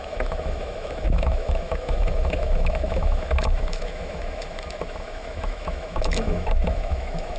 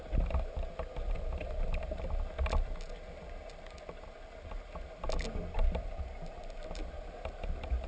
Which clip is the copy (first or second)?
first